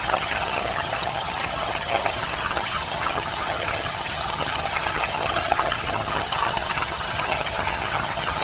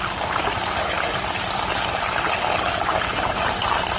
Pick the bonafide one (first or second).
second